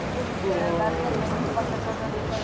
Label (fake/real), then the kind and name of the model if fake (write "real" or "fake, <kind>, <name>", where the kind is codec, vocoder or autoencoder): real